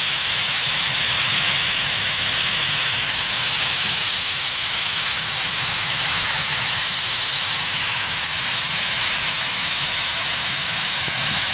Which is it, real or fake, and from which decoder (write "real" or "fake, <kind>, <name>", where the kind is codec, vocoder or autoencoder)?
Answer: fake, autoencoder, DAC-VAE